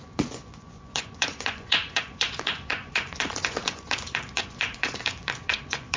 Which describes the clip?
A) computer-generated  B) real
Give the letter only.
A